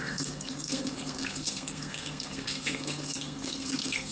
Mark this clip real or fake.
fake